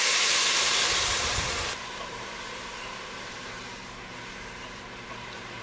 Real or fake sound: fake